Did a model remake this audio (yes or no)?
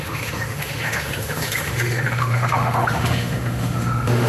yes